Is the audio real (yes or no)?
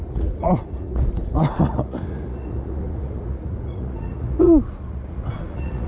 no